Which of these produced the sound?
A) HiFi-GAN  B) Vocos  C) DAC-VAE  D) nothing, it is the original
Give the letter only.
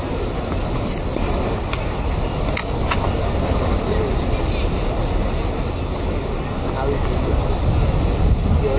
D